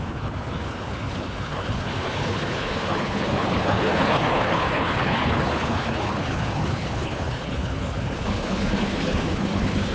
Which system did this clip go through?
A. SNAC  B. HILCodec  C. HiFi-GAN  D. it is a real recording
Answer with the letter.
B